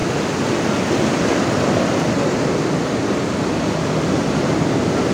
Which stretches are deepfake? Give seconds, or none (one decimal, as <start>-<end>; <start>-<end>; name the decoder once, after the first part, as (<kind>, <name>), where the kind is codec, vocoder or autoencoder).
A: none

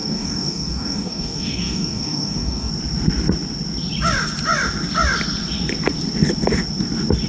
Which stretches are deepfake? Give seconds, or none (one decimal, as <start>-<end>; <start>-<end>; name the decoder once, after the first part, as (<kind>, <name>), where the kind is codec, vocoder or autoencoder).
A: 0.0-2.7 (codec, DAC)